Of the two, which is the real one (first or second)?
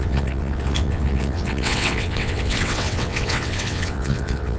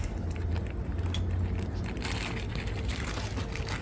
second